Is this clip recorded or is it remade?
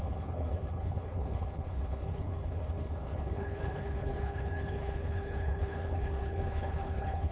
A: remade